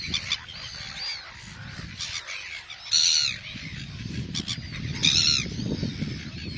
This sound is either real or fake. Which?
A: real